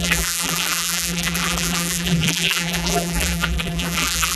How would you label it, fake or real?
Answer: fake